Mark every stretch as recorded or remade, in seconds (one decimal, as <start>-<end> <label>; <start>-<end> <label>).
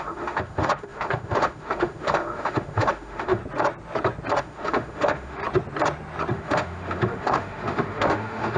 0.0-3.4 remade; 3.4-4.4 recorded; 4.4-5.4 remade; 5.4-6.3 recorded; 6.3-8.6 remade